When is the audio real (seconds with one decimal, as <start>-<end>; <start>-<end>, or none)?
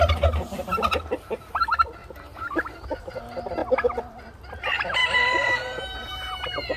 0.0-2.0; 2.7-5.0; 5.5-6.8